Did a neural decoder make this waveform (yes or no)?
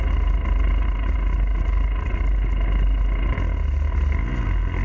no